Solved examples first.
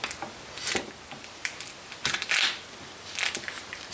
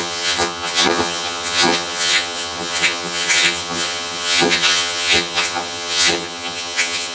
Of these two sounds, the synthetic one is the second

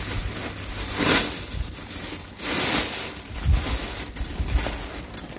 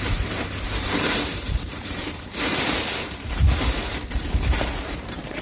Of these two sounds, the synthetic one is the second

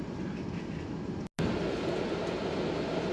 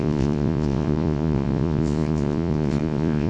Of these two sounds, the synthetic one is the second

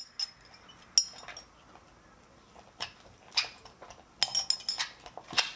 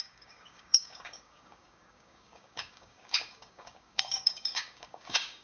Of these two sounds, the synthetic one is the second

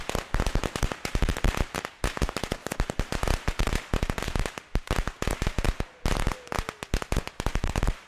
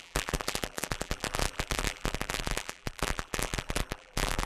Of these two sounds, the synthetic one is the second